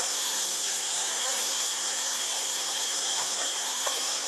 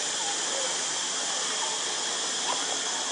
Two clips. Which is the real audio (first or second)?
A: second